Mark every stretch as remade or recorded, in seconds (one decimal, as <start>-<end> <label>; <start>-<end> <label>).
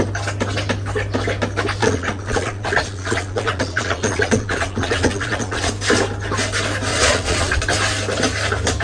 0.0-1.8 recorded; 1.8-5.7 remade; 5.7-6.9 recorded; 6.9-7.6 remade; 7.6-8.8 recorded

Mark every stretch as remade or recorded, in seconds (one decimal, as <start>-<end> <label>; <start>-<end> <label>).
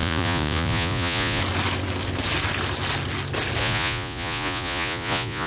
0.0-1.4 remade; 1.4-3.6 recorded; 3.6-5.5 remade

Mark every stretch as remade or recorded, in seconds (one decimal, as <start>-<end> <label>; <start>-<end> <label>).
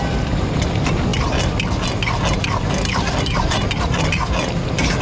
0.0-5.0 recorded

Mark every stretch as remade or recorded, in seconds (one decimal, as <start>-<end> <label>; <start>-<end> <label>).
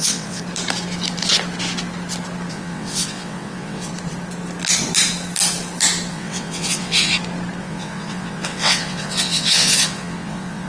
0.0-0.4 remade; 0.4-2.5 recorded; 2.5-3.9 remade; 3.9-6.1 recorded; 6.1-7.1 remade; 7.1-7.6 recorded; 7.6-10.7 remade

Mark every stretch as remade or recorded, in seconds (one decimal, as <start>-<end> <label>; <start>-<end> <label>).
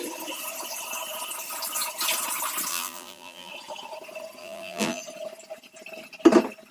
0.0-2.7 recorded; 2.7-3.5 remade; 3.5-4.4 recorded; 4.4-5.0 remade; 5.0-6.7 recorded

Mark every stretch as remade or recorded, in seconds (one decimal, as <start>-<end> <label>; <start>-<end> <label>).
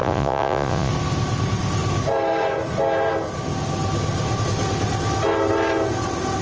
0.0-0.9 remade; 0.9-6.4 recorded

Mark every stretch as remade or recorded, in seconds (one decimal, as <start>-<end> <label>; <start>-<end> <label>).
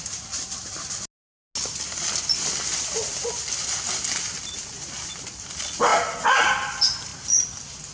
0.0-7.9 recorded